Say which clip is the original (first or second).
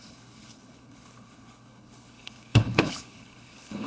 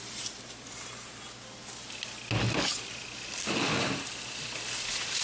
second